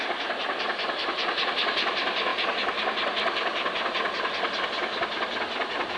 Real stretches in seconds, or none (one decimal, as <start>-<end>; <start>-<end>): 0.0-6.0